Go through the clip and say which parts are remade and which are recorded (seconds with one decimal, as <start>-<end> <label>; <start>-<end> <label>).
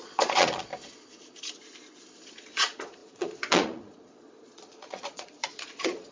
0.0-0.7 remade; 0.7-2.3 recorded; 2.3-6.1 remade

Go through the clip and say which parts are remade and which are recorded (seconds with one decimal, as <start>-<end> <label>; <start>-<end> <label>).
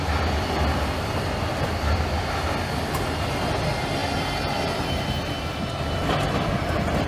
0.0-7.1 recorded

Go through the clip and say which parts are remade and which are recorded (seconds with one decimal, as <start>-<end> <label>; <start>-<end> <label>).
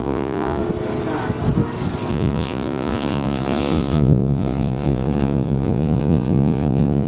0.0-0.6 remade; 0.6-2.1 recorded; 2.1-7.1 remade